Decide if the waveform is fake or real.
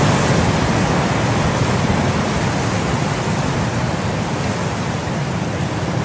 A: real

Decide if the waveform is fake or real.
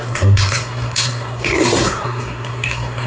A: fake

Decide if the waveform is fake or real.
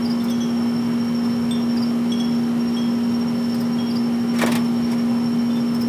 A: real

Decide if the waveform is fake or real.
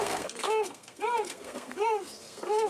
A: fake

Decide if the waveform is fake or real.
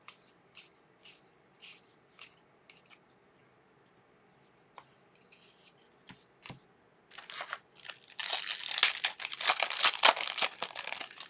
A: real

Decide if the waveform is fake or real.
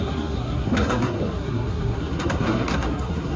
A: fake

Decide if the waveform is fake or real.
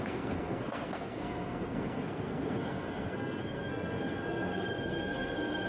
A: fake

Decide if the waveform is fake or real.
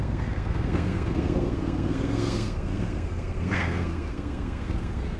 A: fake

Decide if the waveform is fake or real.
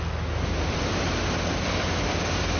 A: real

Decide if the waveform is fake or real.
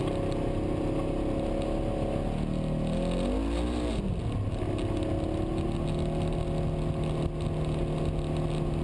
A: real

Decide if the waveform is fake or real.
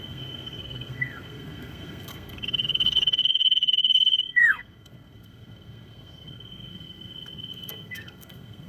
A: fake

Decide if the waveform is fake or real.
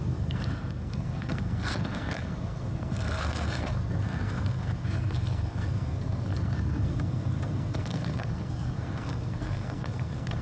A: fake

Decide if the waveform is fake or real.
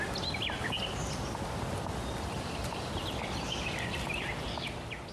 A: real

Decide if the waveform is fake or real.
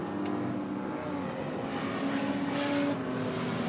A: real